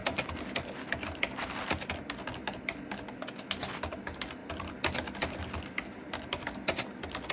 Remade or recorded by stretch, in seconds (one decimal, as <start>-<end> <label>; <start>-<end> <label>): 0.0-7.3 recorded